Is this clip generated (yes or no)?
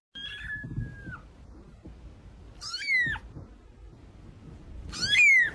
no